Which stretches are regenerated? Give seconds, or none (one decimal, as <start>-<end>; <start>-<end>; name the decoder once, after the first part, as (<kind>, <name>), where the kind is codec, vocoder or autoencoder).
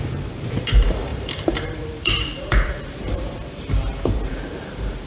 0.0-5.1 (vocoder, BigVGAN v2)